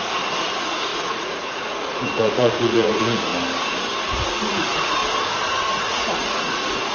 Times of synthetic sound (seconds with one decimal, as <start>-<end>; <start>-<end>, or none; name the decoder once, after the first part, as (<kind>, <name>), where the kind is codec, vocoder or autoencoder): 0.0-3.3 (vocoder, Vocos); 4.0-5.0; 5.8-6.9